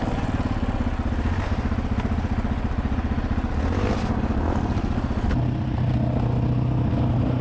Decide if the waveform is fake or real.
real